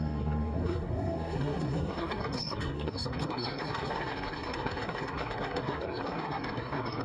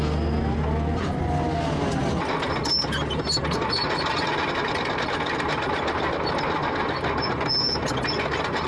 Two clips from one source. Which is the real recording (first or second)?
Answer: second